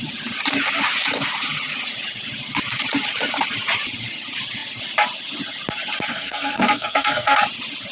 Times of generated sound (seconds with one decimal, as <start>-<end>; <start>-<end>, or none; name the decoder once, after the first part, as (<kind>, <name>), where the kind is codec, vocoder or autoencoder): 6.1-7.4 (codec, SNAC)